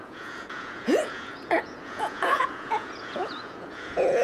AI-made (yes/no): yes